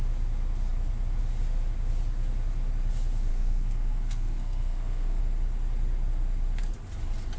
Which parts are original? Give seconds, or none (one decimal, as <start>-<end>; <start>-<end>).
0.0-3.3; 5.2-7.4